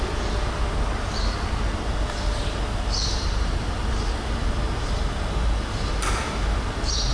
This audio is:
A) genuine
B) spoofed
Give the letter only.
B